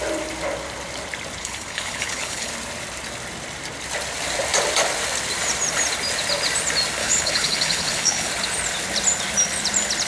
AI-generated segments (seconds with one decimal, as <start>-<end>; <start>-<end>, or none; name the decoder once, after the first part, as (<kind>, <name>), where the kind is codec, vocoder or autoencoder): 1.4-2.5 (codec, HILCodec); 7.0-8.3